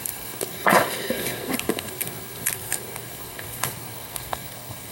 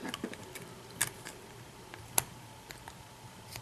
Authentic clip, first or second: second